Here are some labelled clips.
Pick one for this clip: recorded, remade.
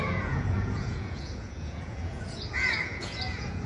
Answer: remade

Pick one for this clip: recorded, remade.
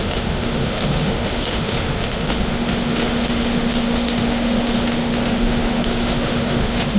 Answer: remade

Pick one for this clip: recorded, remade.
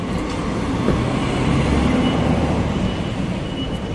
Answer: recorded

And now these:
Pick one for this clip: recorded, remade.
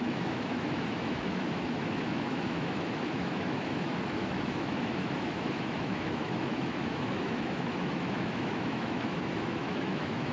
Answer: remade